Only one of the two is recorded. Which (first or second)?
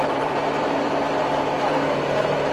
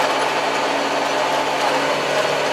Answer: second